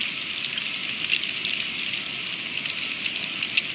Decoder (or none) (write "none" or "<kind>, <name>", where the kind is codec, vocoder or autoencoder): none